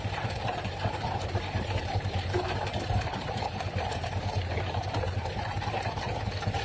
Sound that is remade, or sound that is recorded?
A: remade